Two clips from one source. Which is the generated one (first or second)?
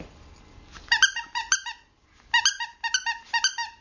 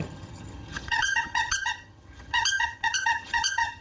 second